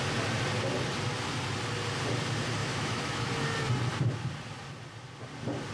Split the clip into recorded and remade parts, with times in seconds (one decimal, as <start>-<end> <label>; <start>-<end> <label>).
0.0-2.6 recorded; 2.6-3.3 remade; 3.3-5.7 recorded